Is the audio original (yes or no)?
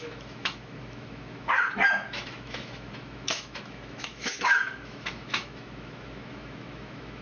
no